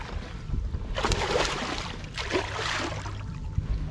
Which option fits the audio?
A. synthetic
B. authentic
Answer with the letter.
A